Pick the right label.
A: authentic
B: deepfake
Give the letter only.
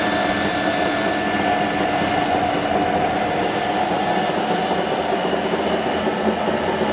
A